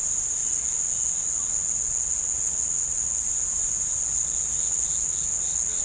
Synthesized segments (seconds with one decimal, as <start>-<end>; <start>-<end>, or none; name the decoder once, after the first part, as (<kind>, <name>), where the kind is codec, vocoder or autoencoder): 0.4-3.3 (vocoder, WaveNeXt); 4.0-5.8